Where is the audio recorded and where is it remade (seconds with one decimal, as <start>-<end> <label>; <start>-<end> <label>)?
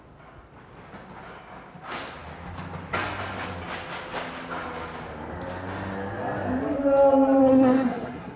0.0-7.4 recorded; 7.4-8.4 remade